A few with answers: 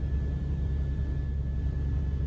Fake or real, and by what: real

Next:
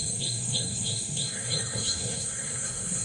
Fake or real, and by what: fake, codec, SNAC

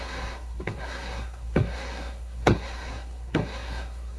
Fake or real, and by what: fake, codec, SNAC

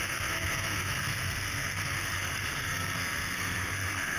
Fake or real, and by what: fake, codec, SNAC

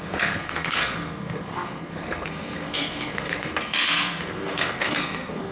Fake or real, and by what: fake, codec, SNAC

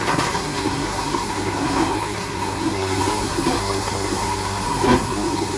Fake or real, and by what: fake, codec, SNAC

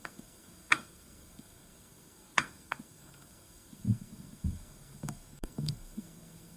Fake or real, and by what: fake, codec, SNAC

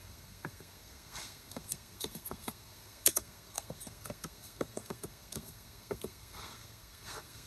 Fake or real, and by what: fake, codec, SNAC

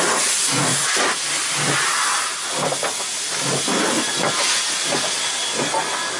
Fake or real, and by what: real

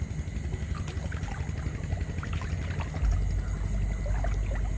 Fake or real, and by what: real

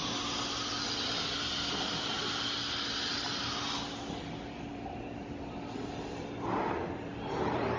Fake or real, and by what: real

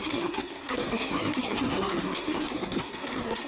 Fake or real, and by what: fake, codec, SNAC